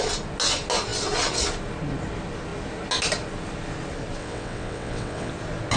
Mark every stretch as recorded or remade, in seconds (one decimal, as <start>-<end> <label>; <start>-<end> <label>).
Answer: 0.0-4.2 recorded; 4.2-5.3 remade; 5.3-5.8 recorded